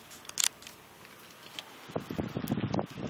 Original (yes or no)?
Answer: yes